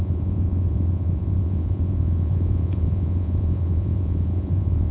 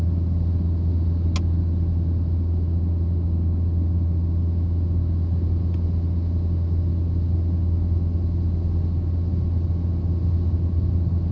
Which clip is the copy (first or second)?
first